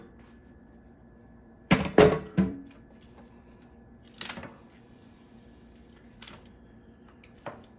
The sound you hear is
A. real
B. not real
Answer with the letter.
B